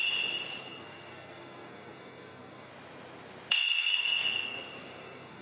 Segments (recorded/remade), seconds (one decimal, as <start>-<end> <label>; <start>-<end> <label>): 0.0-0.6 recorded; 0.6-2.7 remade; 2.7-3.5 recorded; 3.5-5.4 remade